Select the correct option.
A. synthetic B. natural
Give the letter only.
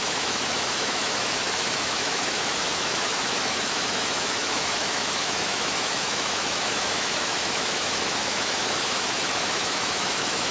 A